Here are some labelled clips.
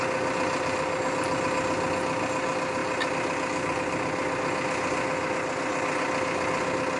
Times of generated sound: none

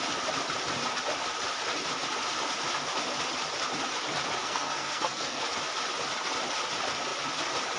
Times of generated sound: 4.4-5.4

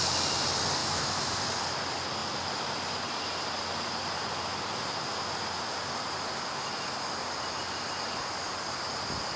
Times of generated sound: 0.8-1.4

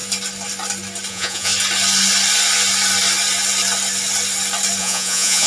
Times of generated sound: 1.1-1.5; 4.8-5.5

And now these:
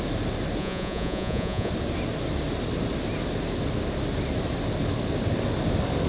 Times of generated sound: 0.6-1.7

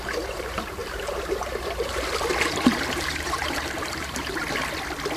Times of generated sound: 0.0-4.4